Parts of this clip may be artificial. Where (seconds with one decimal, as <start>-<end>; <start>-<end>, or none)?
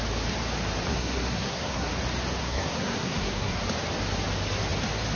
0.9-1.9; 2.4-3.6